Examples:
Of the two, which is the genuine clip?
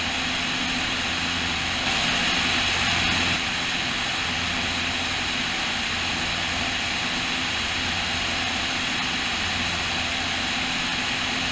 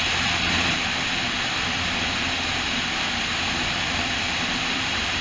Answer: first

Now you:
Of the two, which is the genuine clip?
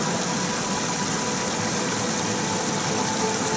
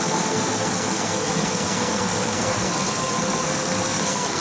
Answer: first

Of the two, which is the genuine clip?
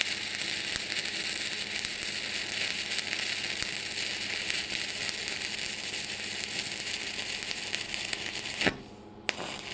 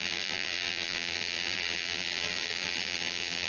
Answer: first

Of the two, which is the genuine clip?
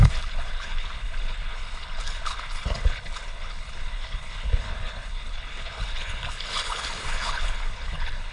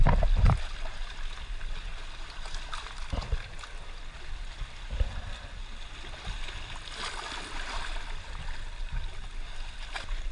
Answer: second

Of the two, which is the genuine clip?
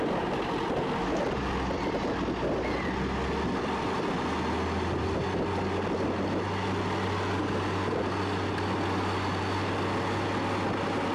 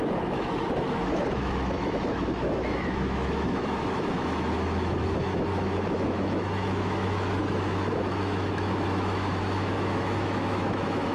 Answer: first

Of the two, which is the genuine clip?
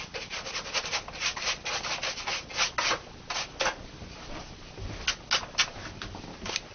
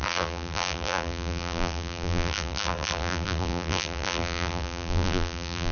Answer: first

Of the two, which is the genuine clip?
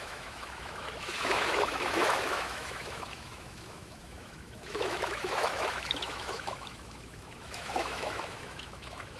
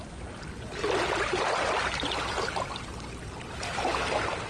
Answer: second